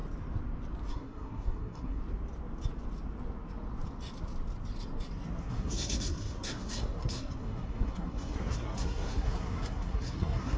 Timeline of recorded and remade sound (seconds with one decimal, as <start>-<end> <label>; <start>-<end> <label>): 0.0-0.9 recorded; 0.9-2.0 remade; 2.0-5.4 recorded; 5.4-10.6 remade

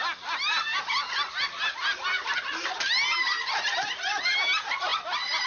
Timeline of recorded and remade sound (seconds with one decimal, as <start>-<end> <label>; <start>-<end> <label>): 0.0-5.5 recorded